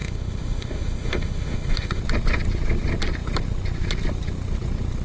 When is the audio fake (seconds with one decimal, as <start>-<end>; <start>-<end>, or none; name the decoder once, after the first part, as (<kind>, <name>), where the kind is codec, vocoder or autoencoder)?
0.0-2.0 (autoencoder, DAC-VAE)